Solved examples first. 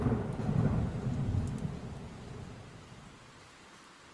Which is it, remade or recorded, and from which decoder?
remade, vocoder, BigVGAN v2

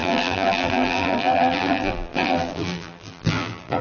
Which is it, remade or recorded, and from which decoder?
remade, vocoder, BigVGAN v2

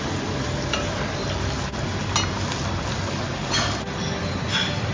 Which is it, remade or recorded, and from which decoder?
recorded